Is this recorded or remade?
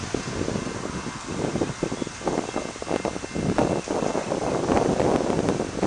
recorded